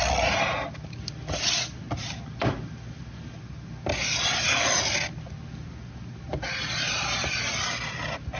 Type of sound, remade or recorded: recorded